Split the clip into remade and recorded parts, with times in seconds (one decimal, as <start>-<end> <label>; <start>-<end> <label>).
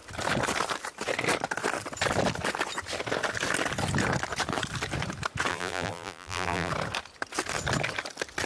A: 0.0-5.5 recorded; 5.5-6.7 remade; 6.7-8.5 recorded